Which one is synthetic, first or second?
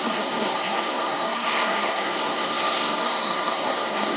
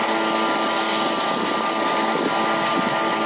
first